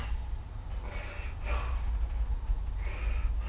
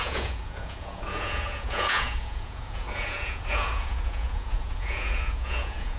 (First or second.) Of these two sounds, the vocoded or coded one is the second